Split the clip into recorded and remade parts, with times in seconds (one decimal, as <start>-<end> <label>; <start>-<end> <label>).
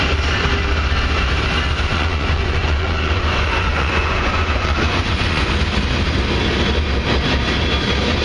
0.0-1.9 recorded; 1.9-5.5 remade; 5.5-8.2 recorded